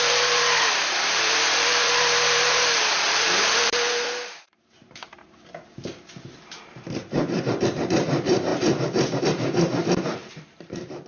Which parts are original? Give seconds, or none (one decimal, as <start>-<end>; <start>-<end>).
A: none